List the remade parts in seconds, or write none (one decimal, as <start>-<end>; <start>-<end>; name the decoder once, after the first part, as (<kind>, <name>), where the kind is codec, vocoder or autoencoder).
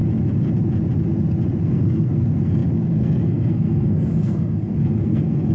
1.6-5.5 (codec, SNAC)